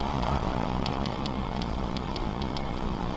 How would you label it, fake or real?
fake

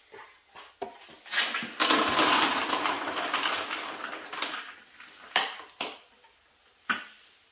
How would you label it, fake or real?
real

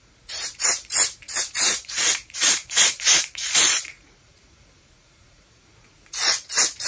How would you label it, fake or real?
fake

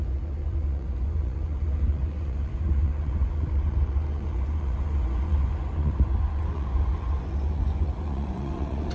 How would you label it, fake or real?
fake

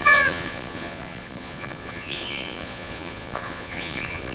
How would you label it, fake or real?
fake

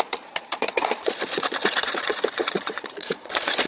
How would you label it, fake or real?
fake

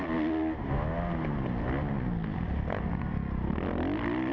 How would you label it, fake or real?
real